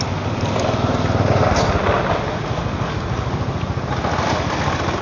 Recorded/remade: recorded